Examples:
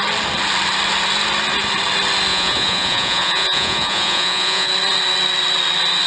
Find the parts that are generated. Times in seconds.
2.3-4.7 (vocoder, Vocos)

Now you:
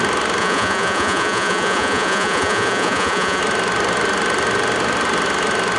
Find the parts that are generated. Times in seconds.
0.4-3.4 (vocoder, Vocos)

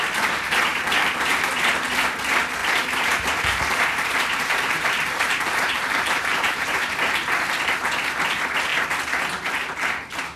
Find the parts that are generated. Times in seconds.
0.7-1.5 (vocoder, BigVGAN v2); 2.6-7.1